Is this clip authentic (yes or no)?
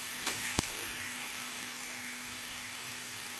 no